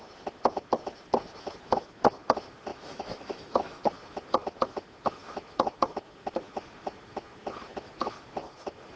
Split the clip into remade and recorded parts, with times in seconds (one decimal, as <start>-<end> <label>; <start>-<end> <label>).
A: 0.0-2.7 recorded; 2.7-3.8 remade; 3.8-9.0 recorded